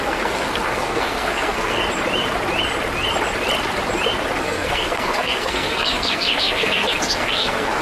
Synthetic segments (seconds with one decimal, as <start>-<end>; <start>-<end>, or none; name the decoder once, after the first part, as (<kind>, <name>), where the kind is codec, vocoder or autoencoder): 0.0-1.8 (codec, SNAC); 4.4-7.8